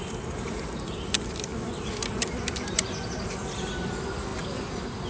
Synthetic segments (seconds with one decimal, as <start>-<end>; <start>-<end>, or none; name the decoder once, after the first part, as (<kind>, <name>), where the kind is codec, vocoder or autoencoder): none